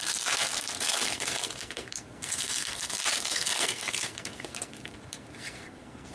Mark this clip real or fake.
fake